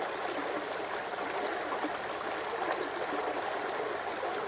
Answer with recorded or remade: recorded